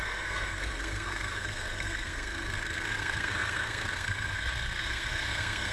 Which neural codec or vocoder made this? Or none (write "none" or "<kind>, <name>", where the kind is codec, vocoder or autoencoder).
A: codec, SNAC